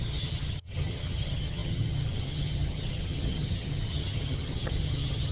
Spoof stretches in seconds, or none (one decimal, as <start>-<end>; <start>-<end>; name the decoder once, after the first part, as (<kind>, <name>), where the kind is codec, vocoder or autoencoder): 0.0-5.3 (vocoder, HiFi-GAN)